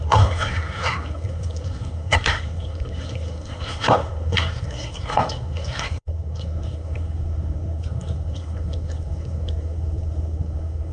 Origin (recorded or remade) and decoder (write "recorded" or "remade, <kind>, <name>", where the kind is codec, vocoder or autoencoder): remade, codec, SNAC